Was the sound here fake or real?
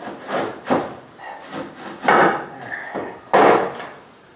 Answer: real